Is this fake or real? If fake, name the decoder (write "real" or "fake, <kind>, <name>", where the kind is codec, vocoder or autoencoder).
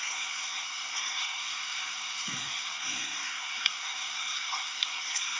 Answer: fake, codec, SNAC